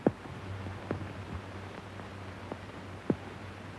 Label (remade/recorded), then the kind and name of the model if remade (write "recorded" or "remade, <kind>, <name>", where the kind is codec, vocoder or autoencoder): recorded